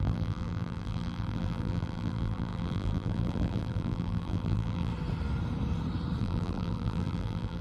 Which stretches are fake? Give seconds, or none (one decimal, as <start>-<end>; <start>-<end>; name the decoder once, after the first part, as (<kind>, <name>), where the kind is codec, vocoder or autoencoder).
0.0-4.9 (vocoder, BigVGAN v2); 6.2-7.6